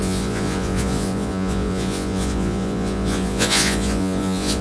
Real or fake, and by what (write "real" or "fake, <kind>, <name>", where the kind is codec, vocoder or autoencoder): fake, vocoder, Vocos